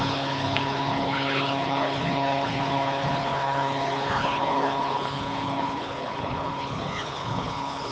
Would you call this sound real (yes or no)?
no